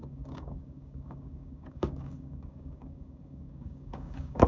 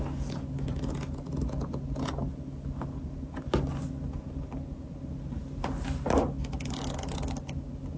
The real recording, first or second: second